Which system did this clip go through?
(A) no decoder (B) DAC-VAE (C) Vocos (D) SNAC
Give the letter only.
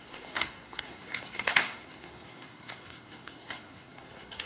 D